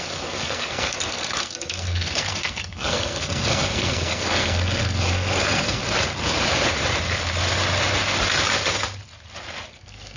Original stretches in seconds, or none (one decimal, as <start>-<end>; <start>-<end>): 5.8-9.7

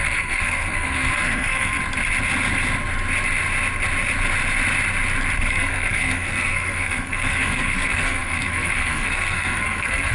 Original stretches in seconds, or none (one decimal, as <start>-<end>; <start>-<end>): 1.8-5.5

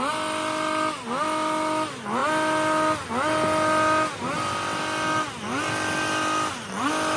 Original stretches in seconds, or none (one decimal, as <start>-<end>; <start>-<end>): 0.0-7.2

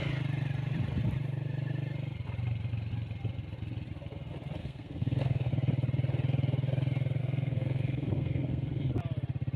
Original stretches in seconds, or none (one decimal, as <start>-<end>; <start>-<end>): 0.0-4.6; 5.5-7.2; 8.9-9.6